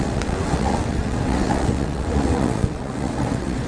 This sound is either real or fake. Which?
fake